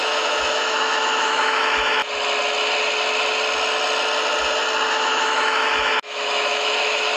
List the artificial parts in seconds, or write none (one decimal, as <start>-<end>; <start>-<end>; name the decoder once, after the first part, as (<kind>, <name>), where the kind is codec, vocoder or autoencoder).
0.0-2.0 (autoencoder, DAC-VAE); 4.9-7.2